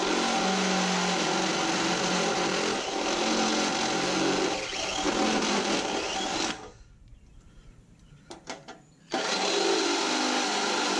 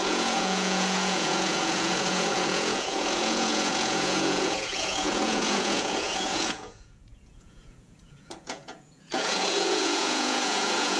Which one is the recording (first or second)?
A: first